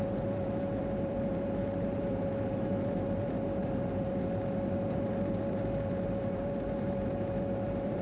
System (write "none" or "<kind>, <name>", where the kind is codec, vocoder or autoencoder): vocoder, BigVGAN v2